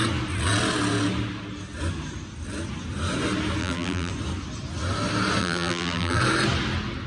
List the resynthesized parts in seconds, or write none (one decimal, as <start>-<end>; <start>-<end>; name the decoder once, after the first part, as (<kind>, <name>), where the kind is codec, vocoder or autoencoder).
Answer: 3.6-4.1 (vocoder, BigVGAN v2); 5.4-6.2